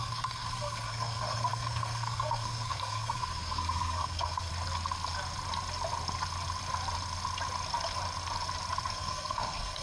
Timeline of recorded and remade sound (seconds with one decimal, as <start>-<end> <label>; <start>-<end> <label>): 0.0-4.5 remade; 4.5-8.9 recorded; 8.9-9.8 remade